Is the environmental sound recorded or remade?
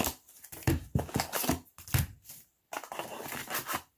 recorded